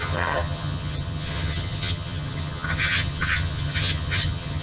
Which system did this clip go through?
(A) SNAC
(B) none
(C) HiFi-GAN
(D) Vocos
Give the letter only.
C